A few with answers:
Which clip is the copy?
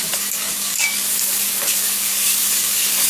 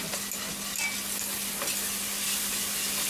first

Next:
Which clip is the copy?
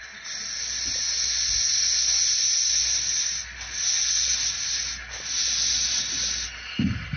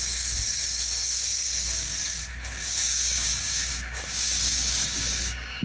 second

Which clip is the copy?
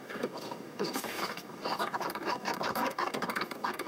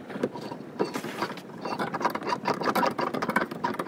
first